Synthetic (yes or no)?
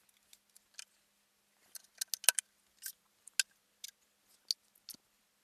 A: no